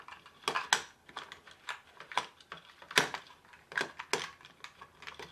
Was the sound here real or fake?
real